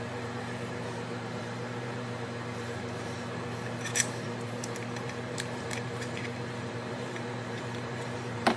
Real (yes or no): no